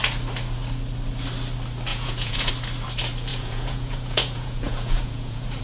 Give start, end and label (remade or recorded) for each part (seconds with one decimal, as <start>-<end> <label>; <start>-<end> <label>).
0.0-1.9 recorded; 1.9-2.5 remade; 2.5-3.3 recorded; 3.3-5.6 remade